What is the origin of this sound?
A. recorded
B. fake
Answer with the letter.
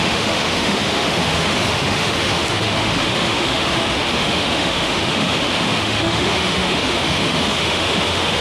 B